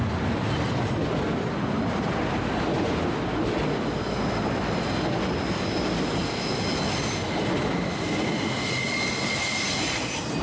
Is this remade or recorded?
recorded